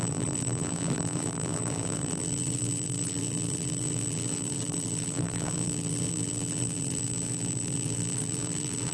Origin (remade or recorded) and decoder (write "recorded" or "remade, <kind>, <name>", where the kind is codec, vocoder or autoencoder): remade, vocoder, BigVGAN v2